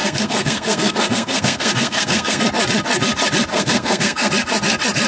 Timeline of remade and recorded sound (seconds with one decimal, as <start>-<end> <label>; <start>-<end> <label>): 0.0-2.4 remade; 2.4-3.5 recorded; 3.5-4.3 remade; 4.3-5.1 recorded